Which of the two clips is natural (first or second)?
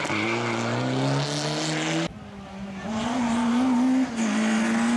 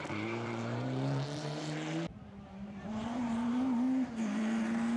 first